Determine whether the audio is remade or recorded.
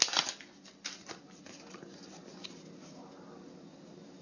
recorded